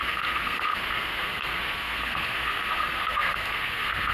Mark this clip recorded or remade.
remade